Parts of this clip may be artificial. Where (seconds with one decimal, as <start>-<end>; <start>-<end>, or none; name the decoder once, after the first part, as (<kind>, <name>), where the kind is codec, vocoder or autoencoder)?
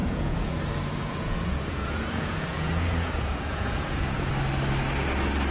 0.0-0.6 (vocoder, Vocos); 1.0-4.3